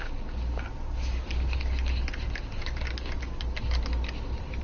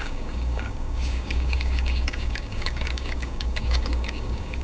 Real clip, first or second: first